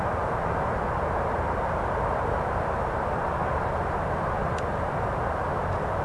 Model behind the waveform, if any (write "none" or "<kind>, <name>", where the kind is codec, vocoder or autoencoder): none